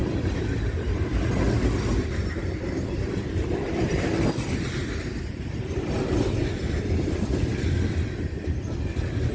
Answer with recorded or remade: recorded